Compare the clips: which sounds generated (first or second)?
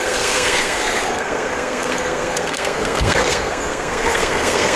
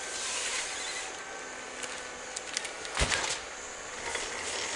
first